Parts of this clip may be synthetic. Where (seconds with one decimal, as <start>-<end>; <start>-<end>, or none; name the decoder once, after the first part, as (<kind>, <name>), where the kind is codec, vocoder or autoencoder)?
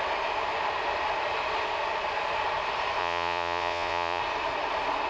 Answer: 3.0-4.2 (vocoder, Vocos)